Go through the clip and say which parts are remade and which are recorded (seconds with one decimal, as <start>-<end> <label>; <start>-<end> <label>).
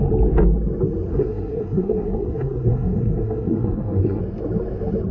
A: 0.0-1.1 recorded; 1.1-4.2 remade; 4.2-5.1 recorded